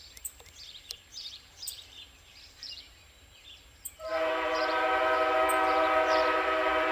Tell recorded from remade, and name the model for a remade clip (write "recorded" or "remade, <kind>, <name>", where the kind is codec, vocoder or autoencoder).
remade, vocoder, BigVGAN v2